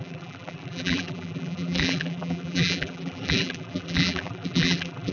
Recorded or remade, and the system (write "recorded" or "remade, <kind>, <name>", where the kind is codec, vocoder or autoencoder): remade, vocoder, BigVGAN v2